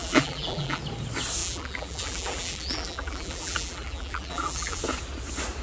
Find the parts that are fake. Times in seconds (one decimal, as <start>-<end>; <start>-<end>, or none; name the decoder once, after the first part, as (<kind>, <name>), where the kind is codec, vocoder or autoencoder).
0.0-0.8 (vocoder, BigVGAN v2); 1.4-4.8